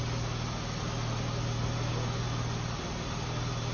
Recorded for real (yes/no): yes